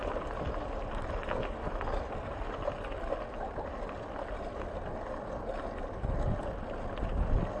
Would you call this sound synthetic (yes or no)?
no